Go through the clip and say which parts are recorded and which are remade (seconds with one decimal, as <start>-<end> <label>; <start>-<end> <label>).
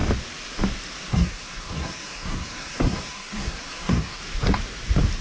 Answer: 0.0-1.1 recorded; 1.1-4.2 remade; 4.2-5.2 recorded